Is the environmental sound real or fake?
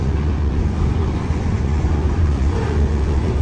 fake